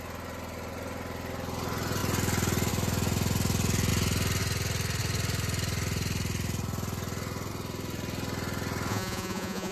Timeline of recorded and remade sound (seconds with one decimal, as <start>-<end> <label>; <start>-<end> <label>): 0.0-8.9 recorded; 8.9-9.7 remade